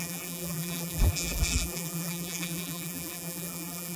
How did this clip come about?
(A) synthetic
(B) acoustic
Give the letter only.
A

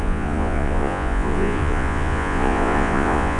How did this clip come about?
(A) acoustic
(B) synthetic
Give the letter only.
B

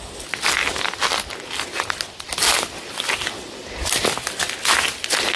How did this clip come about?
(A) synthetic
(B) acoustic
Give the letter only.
B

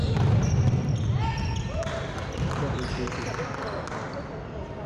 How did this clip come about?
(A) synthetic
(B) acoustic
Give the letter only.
B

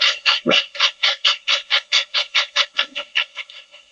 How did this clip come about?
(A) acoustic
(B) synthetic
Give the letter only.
B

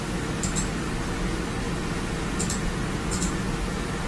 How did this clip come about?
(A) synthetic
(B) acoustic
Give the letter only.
B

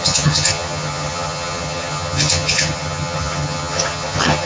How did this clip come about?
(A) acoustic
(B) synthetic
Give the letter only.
B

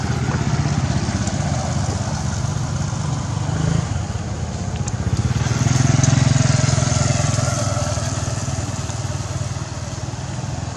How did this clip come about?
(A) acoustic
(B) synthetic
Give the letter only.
A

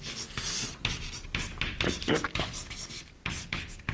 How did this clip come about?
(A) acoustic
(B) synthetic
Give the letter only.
A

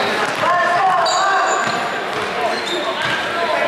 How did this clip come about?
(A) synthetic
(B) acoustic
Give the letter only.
B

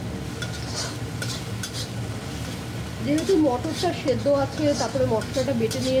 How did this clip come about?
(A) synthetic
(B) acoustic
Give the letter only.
B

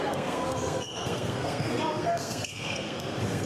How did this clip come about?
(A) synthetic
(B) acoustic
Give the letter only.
A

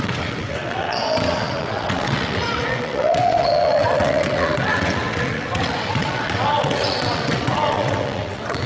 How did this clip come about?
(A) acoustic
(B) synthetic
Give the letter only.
B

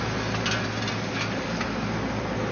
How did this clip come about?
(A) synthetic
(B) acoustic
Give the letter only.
B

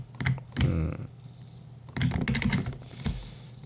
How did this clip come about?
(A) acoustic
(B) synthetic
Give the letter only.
A